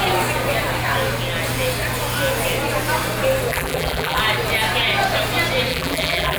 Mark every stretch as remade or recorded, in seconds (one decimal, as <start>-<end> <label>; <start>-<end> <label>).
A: 0.0-3.5 recorded; 3.5-4.2 remade; 4.2-5.7 recorded; 5.7-6.4 remade